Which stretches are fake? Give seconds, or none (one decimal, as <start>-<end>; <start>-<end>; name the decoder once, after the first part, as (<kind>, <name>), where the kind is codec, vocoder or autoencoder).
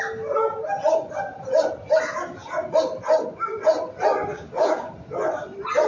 4.3-4.9 (codec, DAC)